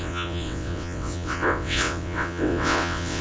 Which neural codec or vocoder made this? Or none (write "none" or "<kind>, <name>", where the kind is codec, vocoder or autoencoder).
vocoder, WaveNeXt